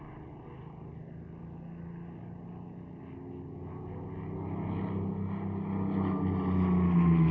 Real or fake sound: real